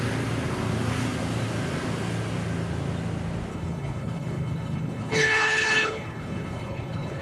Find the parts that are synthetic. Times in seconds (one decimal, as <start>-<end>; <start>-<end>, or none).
3.5-7.2